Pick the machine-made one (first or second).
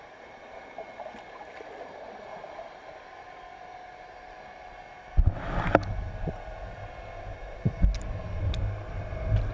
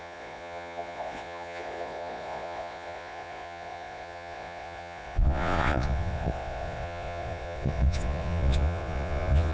second